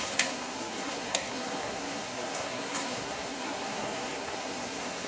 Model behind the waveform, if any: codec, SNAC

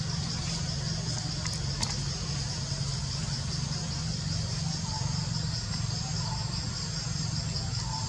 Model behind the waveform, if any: none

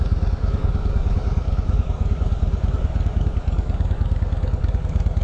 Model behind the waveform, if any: codec, DAC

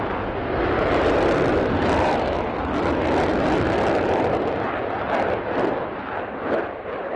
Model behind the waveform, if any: none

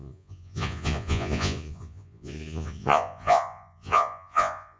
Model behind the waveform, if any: vocoder, Vocos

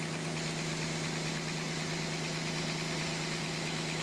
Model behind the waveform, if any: none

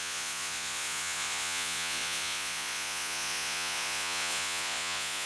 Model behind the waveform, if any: vocoder, Vocos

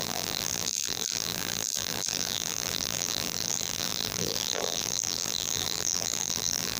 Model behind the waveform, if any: vocoder, BigVGAN v2